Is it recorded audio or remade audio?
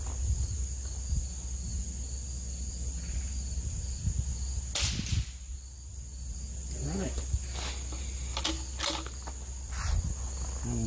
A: recorded